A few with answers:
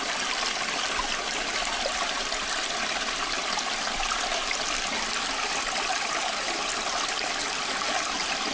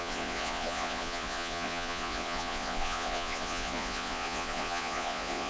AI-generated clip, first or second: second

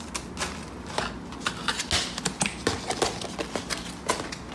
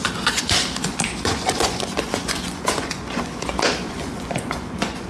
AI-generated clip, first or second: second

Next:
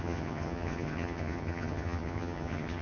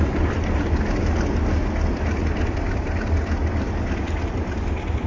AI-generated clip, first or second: first